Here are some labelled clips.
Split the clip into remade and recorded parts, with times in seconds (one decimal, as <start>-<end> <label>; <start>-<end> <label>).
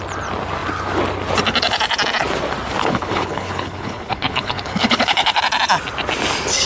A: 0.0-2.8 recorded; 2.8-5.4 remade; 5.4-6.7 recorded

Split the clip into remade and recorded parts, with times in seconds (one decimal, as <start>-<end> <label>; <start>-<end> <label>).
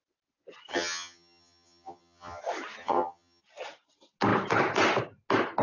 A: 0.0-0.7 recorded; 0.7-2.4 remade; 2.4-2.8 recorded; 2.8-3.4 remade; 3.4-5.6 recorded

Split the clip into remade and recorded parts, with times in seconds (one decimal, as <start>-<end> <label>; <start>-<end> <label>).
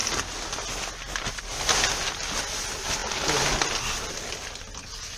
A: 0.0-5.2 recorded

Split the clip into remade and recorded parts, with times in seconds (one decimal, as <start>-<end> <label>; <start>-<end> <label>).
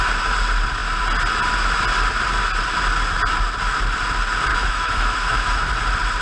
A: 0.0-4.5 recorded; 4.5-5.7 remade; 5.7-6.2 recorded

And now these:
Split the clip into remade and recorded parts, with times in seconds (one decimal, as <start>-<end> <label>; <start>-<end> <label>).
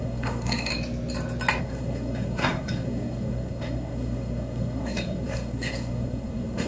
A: 0.0-0.7 remade; 0.7-1.6 recorded; 1.6-6.7 remade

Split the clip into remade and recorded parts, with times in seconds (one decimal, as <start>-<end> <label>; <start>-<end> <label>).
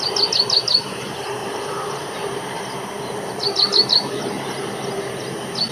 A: 0.0-1.4 recorded; 1.4-4.3 remade; 4.3-5.7 recorded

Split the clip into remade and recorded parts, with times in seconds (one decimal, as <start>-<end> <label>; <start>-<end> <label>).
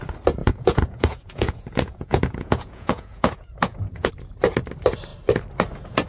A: 0.0-0.4 recorded; 0.4-4.1 remade; 4.1-6.1 recorded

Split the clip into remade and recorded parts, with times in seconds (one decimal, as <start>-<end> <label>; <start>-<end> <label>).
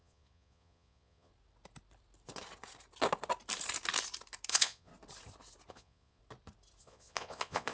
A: 0.0-1.3 remade; 1.3-4.5 recorded; 4.5-4.9 remade; 4.9-5.7 recorded; 5.7-6.2 remade; 6.2-6.8 recorded; 6.8-7.7 remade